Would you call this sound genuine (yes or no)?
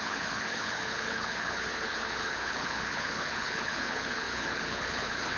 no